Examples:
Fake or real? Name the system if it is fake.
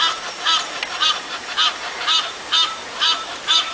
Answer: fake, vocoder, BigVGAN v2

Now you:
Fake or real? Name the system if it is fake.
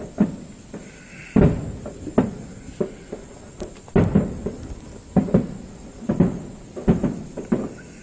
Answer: real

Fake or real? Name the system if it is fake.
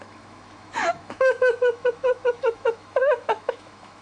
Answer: fake, autoencoder, DAC-VAE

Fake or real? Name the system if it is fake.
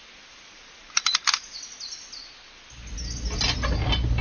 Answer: real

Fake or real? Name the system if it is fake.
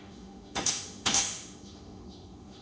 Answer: fake, autoencoder, DAC-VAE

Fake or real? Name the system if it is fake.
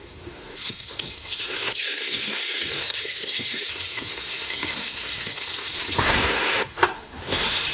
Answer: fake, codec, SNAC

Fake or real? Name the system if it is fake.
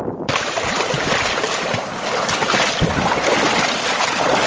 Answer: real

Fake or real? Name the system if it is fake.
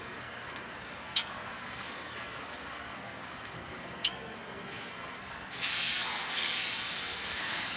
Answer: fake, codec, SNAC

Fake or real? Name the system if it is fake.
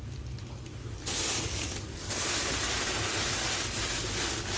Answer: real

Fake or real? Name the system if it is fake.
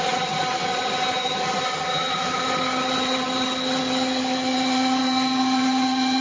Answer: fake, vocoder, HiFi-GAN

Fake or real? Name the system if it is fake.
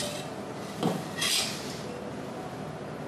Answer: fake, vocoder, BigVGAN v2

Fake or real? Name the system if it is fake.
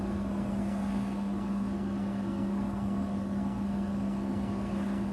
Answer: fake, codec, SNAC